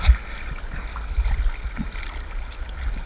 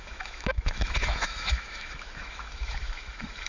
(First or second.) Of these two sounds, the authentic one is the first